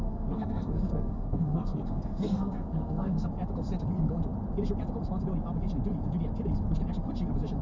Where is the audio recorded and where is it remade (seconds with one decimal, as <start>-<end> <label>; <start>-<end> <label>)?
0.0-3.2 remade; 3.2-7.6 recorded